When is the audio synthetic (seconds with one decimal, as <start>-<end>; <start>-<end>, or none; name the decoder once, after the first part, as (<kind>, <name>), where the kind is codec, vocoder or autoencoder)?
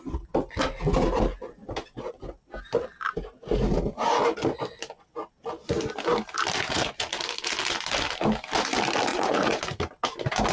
9.1-9.6 (vocoder, Vocos)